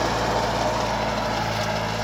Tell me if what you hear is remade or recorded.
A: recorded